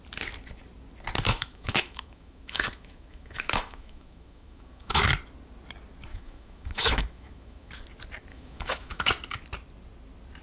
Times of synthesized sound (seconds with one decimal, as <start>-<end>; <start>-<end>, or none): 1.3-5.0; 6.1-7.7; 8.3-9.0